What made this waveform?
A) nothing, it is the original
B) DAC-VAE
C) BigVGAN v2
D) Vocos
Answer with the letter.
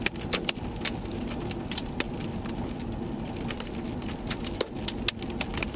A